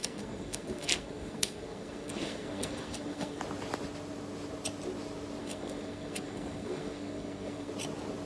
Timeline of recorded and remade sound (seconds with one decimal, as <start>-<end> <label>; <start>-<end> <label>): 0.0-3.4 remade; 3.4-5.4 recorded; 5.4-7.7 remade; 7.7-8.3 recorded